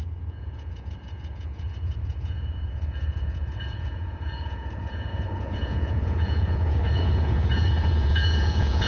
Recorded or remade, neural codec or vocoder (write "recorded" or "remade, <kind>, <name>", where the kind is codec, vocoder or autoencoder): remade, vocoder, Vocos